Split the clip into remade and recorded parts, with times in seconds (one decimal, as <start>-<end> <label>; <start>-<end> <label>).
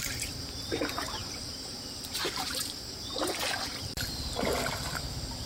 0.0-3.7 remade; 3.7-5.5 recorded